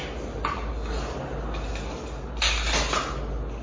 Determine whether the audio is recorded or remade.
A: recorded